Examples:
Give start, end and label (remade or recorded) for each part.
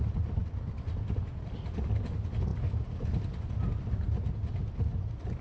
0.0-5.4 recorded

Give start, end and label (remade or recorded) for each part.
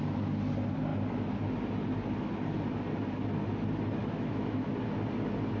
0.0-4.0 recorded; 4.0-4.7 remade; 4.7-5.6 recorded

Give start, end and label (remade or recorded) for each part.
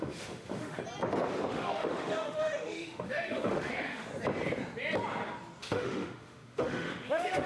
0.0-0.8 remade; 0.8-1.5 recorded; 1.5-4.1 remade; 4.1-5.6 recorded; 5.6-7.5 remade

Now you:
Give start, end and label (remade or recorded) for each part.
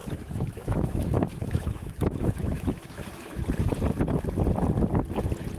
0.0-3.4 remade; 3.4-5.6 recorded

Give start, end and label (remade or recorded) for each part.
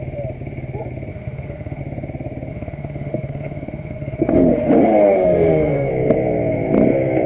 0.0-1.1 recorded; 1.1-1.8 remade; 1.8-2.5 recorded; 2.5-5.9 remade; 5.9-7.3 recorded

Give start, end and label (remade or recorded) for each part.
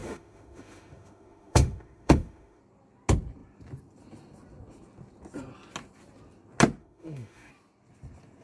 0.0-2.6 remade; 2.6-6.8 recorded; 6.8-7.5 remade; 7.5-8.4 recorded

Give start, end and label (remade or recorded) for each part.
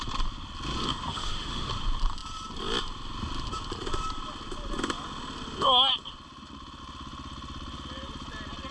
0.0-1.1 recorded; 1.1-1.7 remade; 1.7-8.7 recorded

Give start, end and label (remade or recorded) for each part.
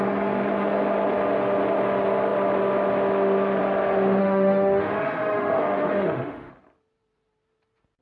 0.0-4.2 recorded; 4.2-6.5 remade; 6.5-8.0 recorded